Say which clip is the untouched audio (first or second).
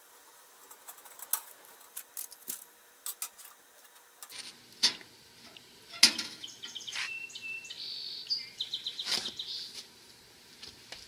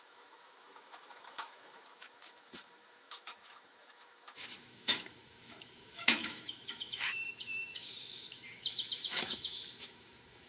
first